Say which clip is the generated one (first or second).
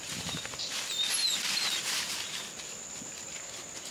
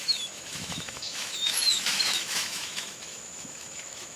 second